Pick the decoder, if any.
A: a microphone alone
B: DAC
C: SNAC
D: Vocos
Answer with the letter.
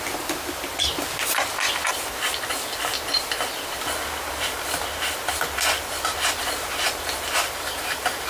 A